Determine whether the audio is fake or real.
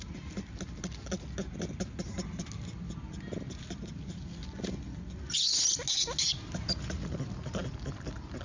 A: real